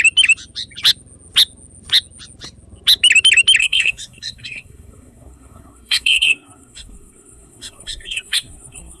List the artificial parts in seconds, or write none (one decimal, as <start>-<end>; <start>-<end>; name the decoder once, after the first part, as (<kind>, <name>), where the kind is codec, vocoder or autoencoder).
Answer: 3.6-9.0 (codec, SNAC)